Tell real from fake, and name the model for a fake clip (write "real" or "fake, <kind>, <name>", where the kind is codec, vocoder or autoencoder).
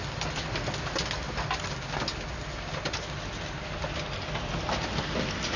real